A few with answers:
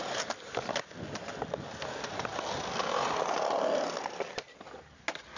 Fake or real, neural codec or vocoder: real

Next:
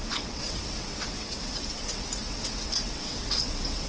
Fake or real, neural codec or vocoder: fake, vocoder, WaveNeXt